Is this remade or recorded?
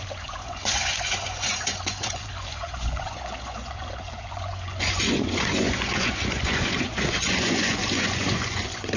remade